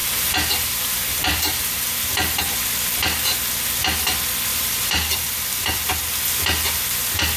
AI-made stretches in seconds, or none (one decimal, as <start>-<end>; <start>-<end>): 0.0-2.4; 4.5-5.9